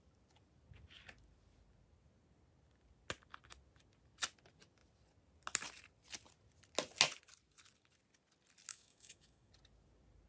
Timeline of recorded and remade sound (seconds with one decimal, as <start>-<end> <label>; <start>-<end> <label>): 0.0-8.7 recorded; 8.7-9.5 remade; 9.5-10.3 recorded